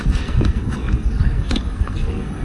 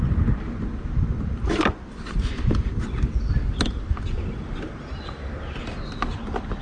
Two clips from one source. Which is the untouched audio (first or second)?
second